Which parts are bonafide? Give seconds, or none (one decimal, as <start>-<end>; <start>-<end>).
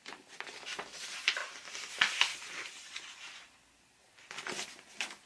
0.0-5.3